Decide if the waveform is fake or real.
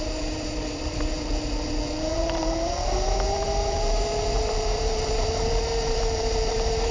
fake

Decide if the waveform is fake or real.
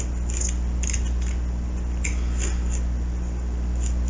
real